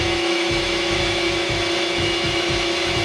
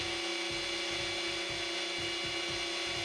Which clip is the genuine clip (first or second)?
second